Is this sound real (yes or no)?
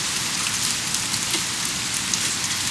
yes